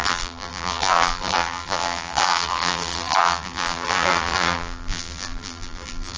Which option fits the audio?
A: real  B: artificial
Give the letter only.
B